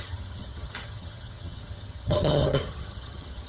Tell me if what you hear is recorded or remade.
remade